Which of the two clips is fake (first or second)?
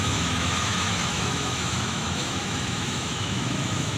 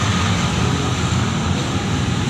first